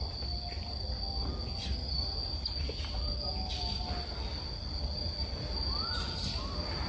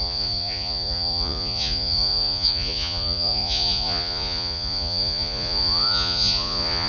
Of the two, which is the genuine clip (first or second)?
first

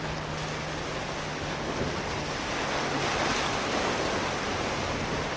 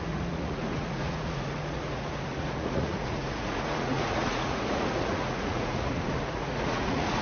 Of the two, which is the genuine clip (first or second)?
first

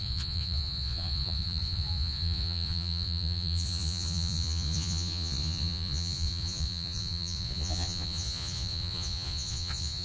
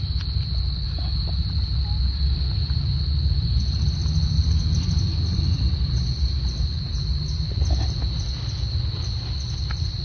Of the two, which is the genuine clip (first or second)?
second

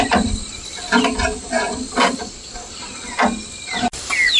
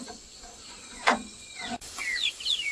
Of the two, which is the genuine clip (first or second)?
first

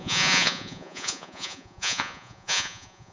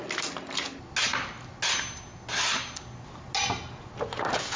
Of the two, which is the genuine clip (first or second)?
second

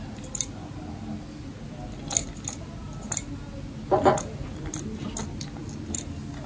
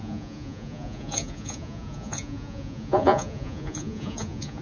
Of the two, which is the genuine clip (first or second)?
first